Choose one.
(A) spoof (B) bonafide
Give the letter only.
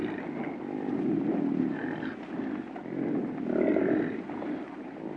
B